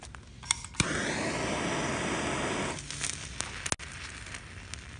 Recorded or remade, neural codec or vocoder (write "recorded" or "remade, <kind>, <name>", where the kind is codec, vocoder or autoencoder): recorded